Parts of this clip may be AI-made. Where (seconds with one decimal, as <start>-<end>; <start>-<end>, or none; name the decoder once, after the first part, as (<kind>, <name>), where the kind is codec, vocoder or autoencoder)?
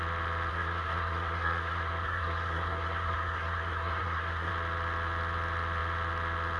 0.5-4.5 (codec, SNAC)